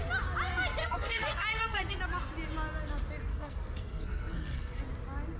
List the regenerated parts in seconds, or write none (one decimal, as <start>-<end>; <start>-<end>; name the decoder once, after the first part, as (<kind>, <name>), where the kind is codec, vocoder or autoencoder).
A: 0.8-2.0 (codec, SNAC); 3.3-4.8